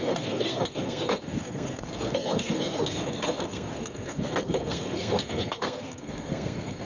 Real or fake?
fake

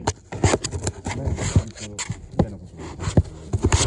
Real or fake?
real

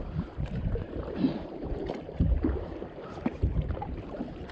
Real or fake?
fake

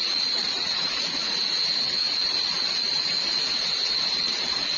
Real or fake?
fake